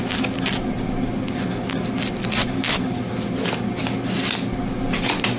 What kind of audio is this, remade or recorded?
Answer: recorded